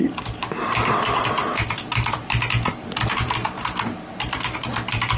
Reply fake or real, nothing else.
fake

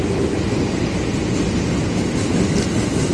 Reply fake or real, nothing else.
real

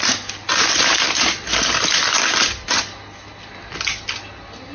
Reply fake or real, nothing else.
real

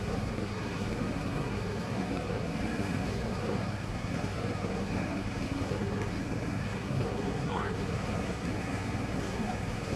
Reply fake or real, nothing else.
fake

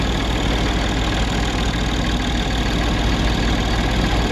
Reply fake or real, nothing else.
real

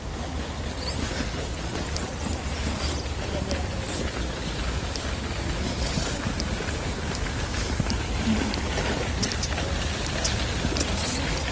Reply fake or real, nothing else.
real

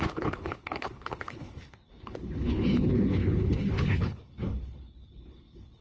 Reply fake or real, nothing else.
fake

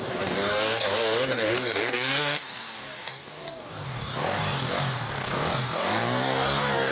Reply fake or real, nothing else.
fake